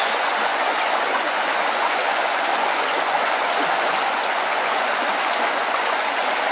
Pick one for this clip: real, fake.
fake